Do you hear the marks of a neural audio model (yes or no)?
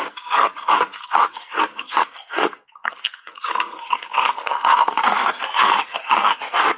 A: yes